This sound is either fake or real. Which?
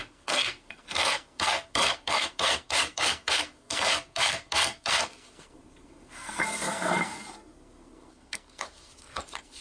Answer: fake